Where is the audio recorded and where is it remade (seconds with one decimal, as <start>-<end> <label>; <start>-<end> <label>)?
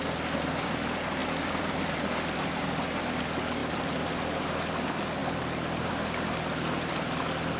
0.0-1.2 recorded; 1.2-3.2 remade; 3.2-3.6 recorded; 3.6-4.1 remade; 4.1-5.2 recorded; 5.2-5.9 remade; 5.9-7.6 recorded